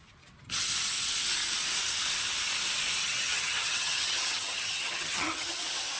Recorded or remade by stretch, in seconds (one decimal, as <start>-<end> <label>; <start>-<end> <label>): 0.0-3.0 recorded; 3.0-5.6 remade; 5.6-6.0 recorded